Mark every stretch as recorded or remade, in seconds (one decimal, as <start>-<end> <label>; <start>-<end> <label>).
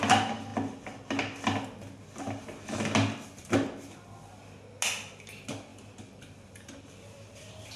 0.0-5.7 recorded; 5.7-7.8 remade